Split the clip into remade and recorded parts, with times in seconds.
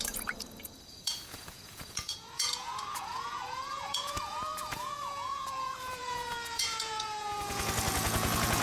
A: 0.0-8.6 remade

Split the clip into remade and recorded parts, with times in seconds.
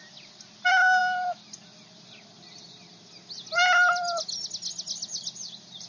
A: 0.0-5.9 recorded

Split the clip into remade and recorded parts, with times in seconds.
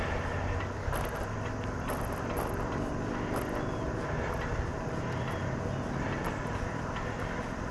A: 0.0-7.7 recorded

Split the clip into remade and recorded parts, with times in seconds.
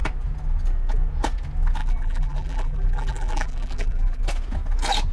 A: 0.0-1.8 recorded; 1.8-4.2 remade; 4.2-5.1 recorded